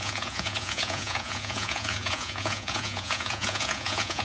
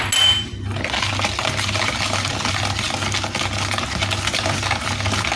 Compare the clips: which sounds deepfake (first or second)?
first